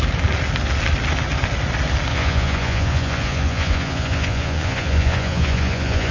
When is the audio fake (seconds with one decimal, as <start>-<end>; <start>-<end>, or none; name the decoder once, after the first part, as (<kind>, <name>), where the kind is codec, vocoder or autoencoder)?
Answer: 2.1-6.1 (vocoder, Vocos)